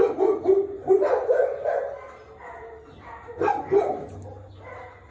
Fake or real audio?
real